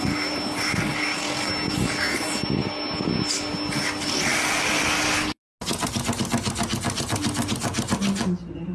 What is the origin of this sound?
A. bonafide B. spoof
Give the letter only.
A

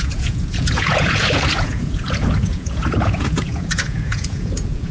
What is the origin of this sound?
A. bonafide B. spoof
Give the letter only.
B